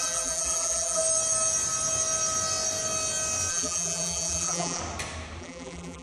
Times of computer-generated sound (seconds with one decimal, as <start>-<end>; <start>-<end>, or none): 0.0-1.0; 3.5-4.8; 5.4-6.0